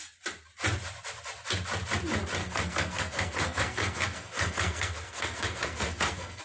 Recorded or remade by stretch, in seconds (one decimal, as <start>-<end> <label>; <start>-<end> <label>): 0.0-2.4 recorded; 2.4-6.4 remade